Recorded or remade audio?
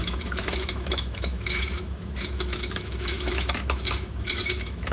remade